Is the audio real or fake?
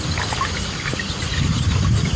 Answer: real